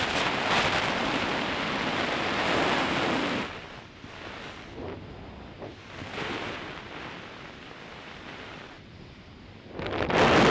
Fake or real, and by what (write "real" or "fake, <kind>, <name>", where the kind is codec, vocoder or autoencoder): real